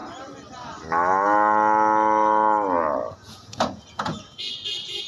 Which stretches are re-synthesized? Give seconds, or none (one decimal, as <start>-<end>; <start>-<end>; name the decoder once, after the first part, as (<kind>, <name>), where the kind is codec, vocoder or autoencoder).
3.1-5.1 (vocoder, Vocos)